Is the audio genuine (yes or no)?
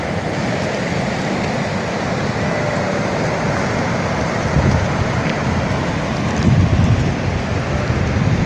yes